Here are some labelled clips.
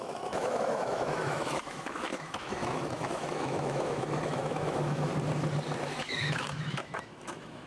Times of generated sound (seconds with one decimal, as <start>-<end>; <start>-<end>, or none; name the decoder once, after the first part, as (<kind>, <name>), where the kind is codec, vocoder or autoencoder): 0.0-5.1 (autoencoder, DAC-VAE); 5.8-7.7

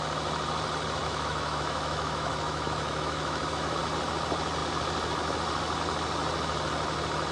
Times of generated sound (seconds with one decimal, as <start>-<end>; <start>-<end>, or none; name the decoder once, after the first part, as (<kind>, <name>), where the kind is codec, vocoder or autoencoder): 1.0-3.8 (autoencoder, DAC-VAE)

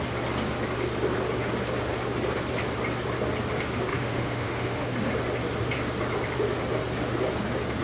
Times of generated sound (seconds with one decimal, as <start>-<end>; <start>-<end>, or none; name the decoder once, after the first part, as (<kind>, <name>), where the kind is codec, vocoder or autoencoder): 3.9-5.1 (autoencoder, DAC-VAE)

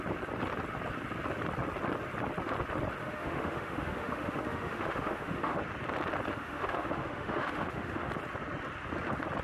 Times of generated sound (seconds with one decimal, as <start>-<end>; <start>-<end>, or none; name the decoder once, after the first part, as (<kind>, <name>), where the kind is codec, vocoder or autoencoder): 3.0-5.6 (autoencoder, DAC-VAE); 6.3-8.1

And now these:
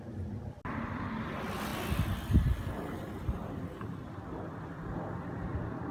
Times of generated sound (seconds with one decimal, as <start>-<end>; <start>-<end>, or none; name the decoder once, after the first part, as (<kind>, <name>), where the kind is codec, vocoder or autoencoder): none